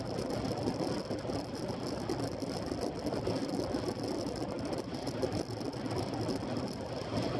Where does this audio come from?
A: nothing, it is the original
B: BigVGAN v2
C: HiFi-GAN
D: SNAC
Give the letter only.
A